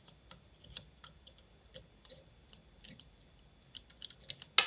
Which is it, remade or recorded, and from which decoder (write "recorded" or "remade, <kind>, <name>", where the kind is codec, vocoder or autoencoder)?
recorded